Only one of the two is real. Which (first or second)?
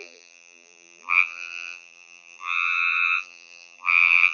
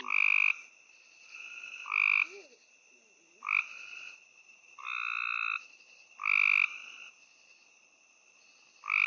second